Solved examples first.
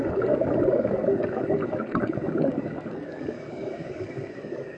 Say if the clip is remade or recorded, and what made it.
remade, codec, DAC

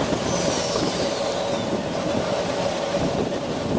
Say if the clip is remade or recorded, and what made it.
recorded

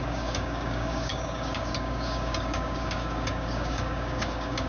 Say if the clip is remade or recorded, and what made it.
remade, codec, DAC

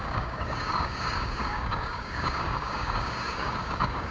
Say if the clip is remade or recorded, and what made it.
remade, codec, DAC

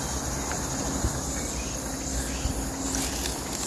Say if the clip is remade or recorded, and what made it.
recorded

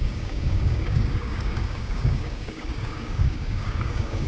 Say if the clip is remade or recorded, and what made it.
remade, codec, DAC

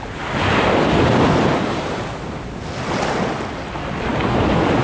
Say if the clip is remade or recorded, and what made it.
recorded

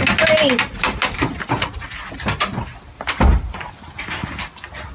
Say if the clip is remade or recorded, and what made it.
recorded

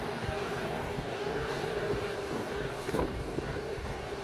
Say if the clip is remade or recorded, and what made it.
remade, codec, DAC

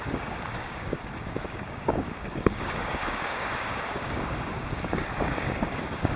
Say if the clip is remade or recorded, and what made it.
remade, codec, DAC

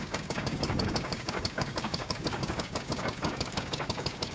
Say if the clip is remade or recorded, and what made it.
remade, codec, DAC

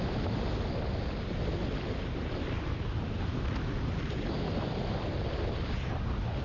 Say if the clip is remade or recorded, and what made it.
recorded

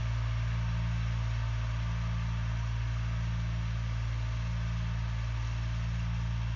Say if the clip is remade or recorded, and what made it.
recorded